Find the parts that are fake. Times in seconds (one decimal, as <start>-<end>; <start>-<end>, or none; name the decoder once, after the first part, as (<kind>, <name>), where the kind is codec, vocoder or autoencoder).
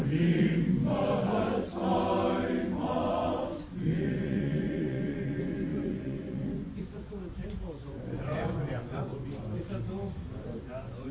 0.0-1.7 (vocoder, Vocos); 2.7-9.1; 10.7-11.1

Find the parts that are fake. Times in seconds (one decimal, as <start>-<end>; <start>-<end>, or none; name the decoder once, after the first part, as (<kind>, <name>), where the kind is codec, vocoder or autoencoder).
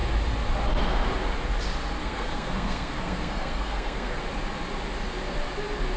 2.0-4.2 (codec, SNAC)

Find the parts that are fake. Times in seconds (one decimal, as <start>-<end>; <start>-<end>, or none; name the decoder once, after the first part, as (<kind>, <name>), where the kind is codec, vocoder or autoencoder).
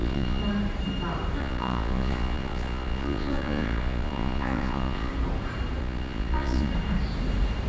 0.0-0.4 (vocoder, Vocos); 1.4-5.1; 5.8-6.7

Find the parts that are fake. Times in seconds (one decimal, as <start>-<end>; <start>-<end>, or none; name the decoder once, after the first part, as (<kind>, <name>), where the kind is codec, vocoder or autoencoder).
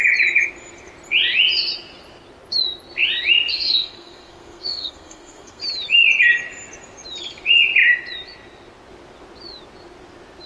3.5-5.6 (codec, SNAC)